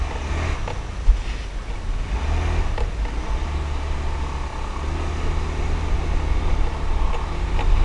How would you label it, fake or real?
real